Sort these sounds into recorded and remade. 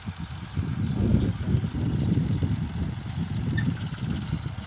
recorded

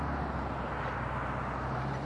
recorded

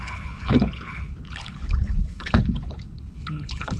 remade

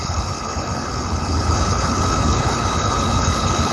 remade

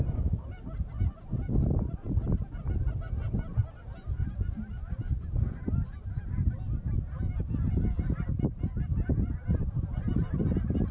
recorded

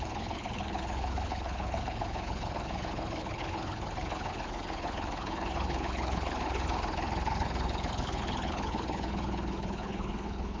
remade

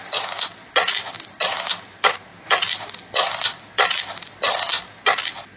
recorded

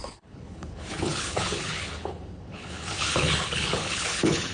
remade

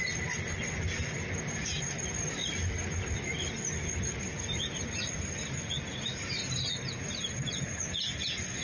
recorded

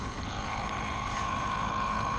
remade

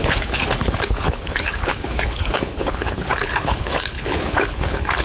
remade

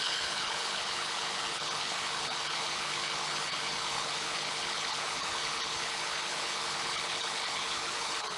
remade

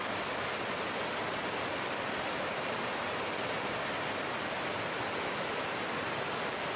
recorded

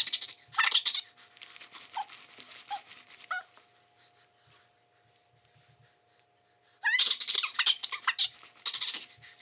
recorded